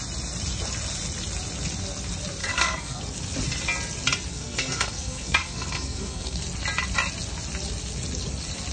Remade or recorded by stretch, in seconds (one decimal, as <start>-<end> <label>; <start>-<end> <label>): 0.0-2.4 recorded; 2.4-3.0 remade; 3.0-4.3 recorded; 4.3-6.4 remade; 6.4-8.7 recorded